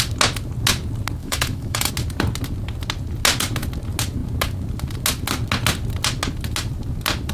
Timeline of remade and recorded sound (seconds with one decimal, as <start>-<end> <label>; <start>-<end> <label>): 0.0-1.2 recorded; 1.2-1.9 remade; 1.9-7.3 recorded